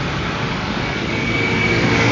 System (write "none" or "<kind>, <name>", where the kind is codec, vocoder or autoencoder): codec, DAC